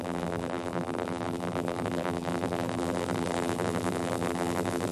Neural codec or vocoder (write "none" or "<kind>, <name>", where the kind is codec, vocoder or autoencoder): vocoder, BigVGAN v2